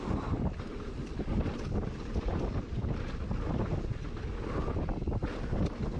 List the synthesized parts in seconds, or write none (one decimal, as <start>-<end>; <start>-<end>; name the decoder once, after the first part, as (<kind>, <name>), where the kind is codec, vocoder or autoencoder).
0.0-2.3 (vocoder, BigVGAN v2)